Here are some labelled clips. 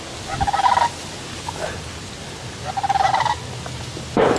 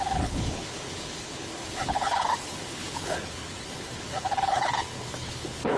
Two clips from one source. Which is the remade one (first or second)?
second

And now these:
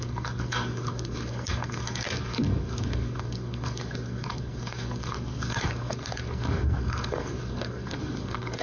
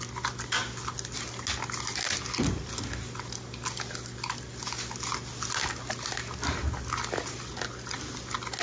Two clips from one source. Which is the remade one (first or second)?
first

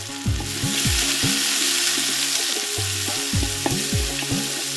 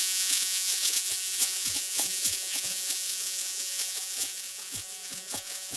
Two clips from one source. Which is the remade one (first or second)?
second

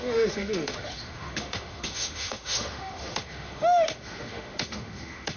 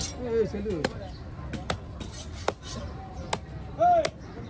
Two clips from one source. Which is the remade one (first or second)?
first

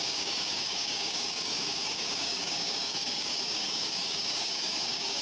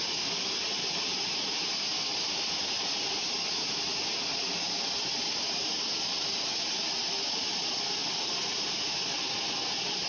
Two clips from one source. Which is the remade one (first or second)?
first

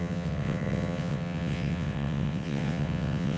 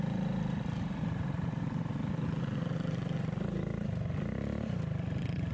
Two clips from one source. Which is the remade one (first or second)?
first